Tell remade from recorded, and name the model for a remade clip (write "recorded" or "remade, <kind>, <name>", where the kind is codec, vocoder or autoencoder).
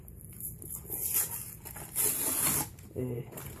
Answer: recorded